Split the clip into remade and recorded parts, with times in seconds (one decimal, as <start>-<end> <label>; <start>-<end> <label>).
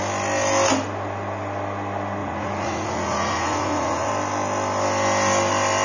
0.0-2.2 recorded; 2.2-4.1 remade; 4.1-5.8 recorded